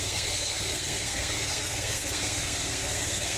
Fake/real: fake